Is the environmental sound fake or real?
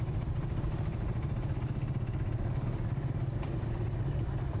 real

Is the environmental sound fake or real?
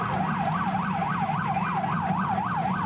real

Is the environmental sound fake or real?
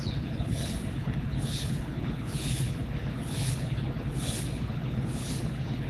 fake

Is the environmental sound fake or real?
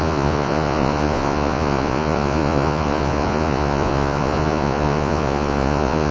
fake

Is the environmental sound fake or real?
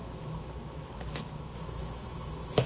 fake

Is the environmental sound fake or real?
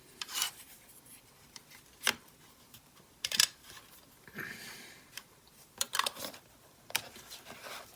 fake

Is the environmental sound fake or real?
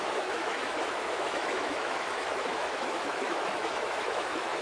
fake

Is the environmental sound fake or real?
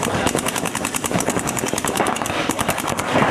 fake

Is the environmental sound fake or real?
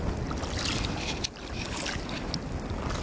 real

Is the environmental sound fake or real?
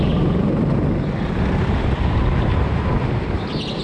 real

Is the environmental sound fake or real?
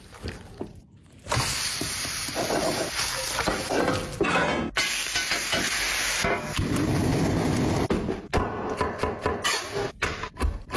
real